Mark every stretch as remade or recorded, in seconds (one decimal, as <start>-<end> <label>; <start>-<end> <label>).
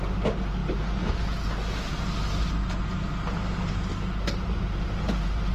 0.0-0.6 remade; 0.6-2.5 recorded; 2.5-3.9 remade; 3.9-4.7 recorded; 4.7-5.5 remade